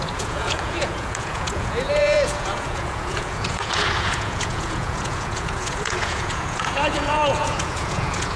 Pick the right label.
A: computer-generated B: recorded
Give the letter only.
A